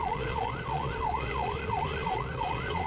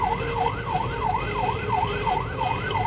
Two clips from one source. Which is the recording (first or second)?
second